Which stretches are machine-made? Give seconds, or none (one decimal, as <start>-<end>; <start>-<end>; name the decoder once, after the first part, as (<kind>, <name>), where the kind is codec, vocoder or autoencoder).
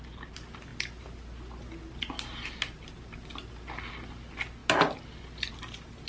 none